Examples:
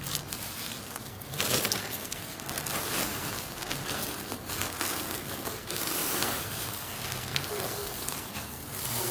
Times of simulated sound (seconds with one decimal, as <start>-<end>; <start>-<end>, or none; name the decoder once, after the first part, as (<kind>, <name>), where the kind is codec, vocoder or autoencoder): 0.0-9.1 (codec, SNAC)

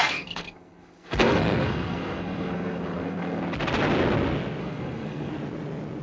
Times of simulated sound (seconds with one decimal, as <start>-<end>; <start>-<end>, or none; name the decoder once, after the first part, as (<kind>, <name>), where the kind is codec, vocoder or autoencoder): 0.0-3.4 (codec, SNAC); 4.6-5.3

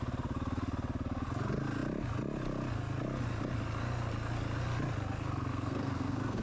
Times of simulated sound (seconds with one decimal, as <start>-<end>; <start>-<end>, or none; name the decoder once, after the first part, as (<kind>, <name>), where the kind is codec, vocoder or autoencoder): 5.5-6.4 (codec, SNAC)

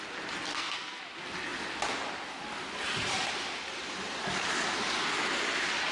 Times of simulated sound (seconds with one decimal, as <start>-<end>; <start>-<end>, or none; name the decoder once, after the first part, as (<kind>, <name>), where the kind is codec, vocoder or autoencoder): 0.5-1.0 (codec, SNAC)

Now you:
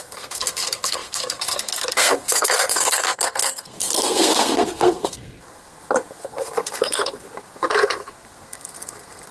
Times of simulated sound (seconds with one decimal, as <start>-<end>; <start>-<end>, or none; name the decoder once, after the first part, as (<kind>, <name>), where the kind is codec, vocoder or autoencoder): 0.0-9.3 (codec, SNAC)